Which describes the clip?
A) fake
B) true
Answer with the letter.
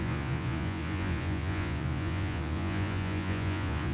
A